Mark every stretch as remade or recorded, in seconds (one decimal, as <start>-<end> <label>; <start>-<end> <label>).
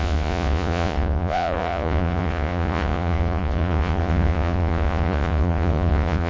0.0-6.3 remade